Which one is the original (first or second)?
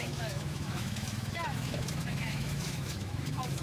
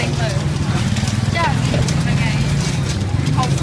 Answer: second